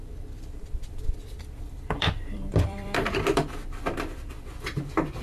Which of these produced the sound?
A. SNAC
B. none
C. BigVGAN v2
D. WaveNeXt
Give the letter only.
C